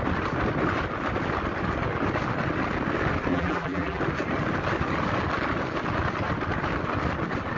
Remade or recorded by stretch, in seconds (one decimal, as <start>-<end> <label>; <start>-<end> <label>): 0.0-3.3 recorded; 3.3-4.0 remade; 4.0-7.6 recorded